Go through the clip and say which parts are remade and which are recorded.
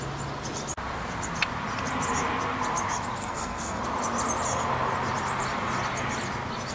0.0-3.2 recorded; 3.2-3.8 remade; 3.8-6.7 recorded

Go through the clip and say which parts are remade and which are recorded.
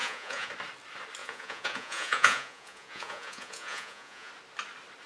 0.0-0.5 remade; 0.5-1.2 recorded; 1.2-4.3 remade; 4.3-5.1 recorded